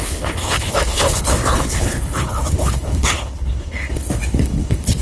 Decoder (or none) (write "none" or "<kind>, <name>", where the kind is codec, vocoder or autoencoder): codec, HILCodec